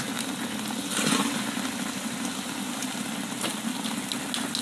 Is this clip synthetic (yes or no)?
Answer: no